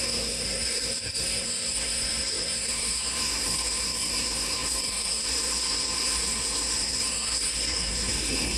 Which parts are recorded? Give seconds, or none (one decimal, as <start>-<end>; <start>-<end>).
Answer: none